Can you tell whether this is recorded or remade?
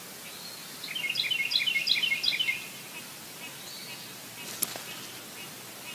recorded